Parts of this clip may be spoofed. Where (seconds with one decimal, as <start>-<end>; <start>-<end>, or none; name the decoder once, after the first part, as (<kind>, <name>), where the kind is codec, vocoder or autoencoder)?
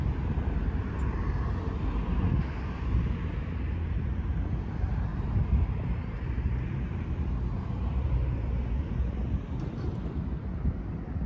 5.1-8.1 (vocoder, BigVGAN v2)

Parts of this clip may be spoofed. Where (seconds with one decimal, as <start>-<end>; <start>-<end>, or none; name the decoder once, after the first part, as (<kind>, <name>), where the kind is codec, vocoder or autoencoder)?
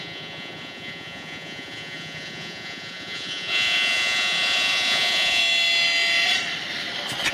0.0-5.4 (vocoder, Vocos)